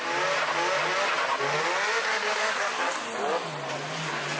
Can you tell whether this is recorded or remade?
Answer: recorded